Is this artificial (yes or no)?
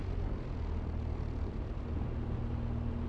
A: no